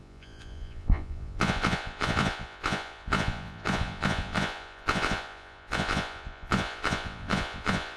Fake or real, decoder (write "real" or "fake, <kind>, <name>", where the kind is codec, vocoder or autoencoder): fake, vocoder, Vocos